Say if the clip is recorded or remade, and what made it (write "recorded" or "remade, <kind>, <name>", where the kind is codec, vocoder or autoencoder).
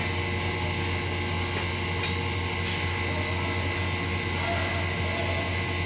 recorded